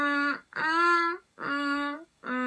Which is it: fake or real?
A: fake